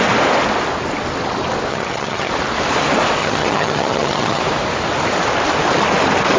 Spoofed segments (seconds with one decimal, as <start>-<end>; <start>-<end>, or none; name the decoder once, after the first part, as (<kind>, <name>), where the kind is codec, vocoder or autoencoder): 1.7-2.3 (vocoder, HiFi-GAN); 3.2-4.4